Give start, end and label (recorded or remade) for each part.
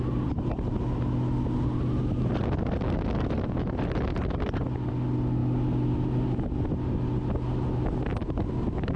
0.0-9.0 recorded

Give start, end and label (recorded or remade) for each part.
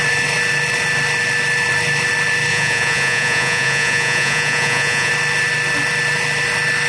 0.0-2.5 recorded; 2.5-5.1 remade; 5.1-6.9 recorded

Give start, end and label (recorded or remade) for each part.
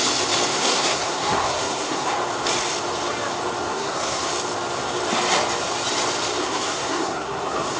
0.0-0.5 recorded; 0.5-2.1 remade; 2.1-3.7 recorded; 3.7-4.3 remade; 4.3-6.4 recorded; 6.4-7.8 remade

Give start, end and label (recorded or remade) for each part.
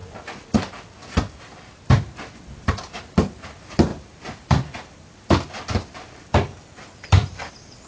0.0-3.9 recorded; 3.9-7.5 remade; 7.5-7.9 recorded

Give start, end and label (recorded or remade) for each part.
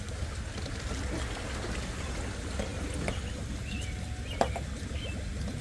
0.0-5.6 recorded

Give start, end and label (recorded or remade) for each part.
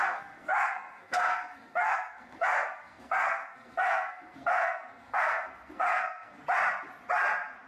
0.0-6.4 remade; 6.4-7.7 recorded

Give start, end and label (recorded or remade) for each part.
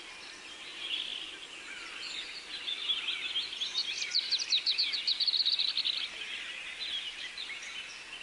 0.0-8.2 recorded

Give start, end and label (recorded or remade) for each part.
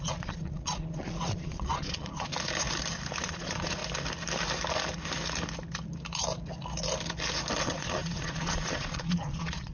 0.0-2.3 remade; 2.3-3.2 recorded; 3.2-3.8 remade; 3.8-7.6 recorded; 7.6-9.7 remade